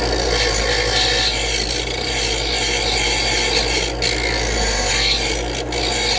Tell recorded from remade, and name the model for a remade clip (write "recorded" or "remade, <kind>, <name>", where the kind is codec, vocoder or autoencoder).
recorded